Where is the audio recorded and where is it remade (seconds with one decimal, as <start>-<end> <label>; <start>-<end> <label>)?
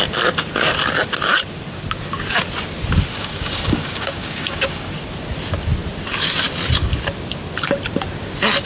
0.0-3.1 recorded; 3.1-4.9 remade; 4.9-8.7 recorded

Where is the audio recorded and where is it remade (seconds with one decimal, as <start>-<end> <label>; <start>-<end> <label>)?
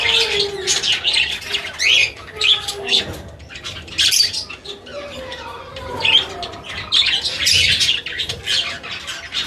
0.0-2.0 recorded; 2.0-3.0 remade; 3.0-9.5 recorded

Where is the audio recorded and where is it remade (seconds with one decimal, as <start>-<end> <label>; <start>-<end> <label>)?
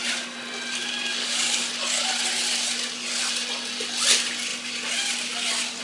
0.0-1.2 recorded; 1.2-1.7 remade; 1.7-5.8 recorded